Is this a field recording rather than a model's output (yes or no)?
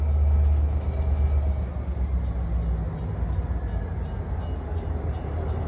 yes